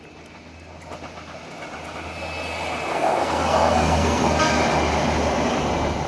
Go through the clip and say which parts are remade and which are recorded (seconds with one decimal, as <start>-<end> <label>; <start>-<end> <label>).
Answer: 0.0-2.9 recorded; 2.9-4.6 remade; 4.6-6.1 recorded